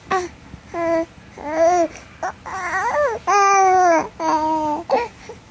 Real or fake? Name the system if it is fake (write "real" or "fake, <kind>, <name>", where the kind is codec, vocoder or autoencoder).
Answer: real